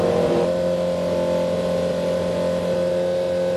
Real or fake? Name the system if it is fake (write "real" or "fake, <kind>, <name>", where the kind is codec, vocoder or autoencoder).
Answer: real